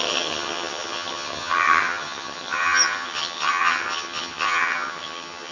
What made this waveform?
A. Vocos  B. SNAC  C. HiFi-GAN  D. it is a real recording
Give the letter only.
C